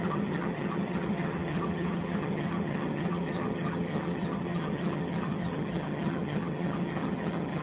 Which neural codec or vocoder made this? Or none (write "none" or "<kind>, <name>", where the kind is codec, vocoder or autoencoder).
vocoder, HiFi-GAN